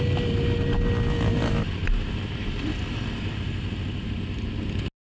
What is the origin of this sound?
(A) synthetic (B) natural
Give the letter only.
B